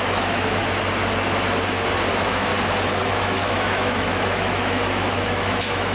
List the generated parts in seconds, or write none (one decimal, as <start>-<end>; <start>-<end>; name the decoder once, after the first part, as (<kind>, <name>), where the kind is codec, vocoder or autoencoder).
0.0-0.6 (autoencoder, DAC-VAE); 2.1-2.5; 3.1-5.9